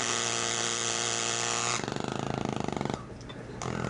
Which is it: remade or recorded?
recorded